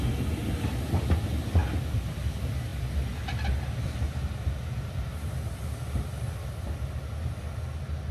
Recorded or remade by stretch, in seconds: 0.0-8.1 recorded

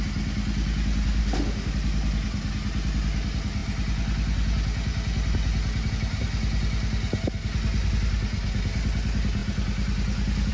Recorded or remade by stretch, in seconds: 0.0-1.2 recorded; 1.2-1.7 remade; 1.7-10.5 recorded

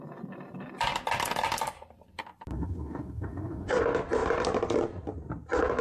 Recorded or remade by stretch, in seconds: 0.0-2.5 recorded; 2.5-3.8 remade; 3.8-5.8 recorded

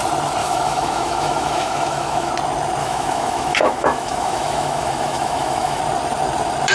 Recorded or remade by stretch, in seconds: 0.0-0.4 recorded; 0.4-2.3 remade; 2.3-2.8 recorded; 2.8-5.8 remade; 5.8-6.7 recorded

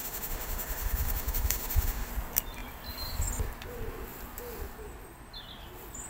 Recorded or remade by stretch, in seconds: 0.0-2.1 remade; 2.1-6.1 recorded

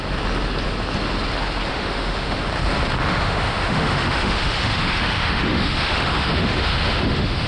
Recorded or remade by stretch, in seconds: 0.0-1.7 recorded; 1.7-2.5 remade; 2.5-3.0 recorded; 3.0-7.5 remade